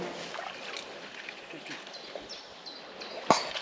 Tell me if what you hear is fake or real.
real